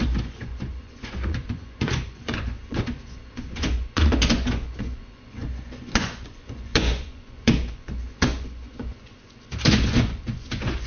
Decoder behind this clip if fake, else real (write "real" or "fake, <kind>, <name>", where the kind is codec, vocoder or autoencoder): fake, vocoder, Vocos